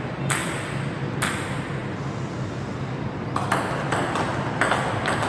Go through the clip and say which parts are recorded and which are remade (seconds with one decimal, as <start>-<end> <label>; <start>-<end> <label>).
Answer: 0.0-5.3 recorded